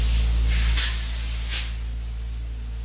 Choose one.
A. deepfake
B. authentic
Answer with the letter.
B